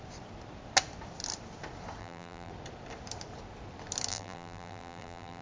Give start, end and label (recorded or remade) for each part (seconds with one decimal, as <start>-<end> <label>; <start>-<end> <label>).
0.0-2.0 recorded; 2.0-2.5 remade; 2.5-4.1 recorded; 4.1-5.4 remade